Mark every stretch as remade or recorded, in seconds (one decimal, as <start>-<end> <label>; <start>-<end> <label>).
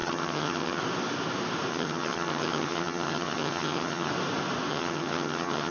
0.0-0.8 remade; 0.8-1.7 recorded; 1.7-4.1 remade; 4.1-4.7 recorded; 4.7-5.7 remade